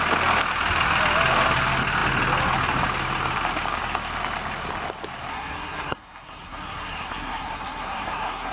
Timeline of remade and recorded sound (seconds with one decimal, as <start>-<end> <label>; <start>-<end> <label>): 0.0-5.3 recorded; 5.3-8.5 remade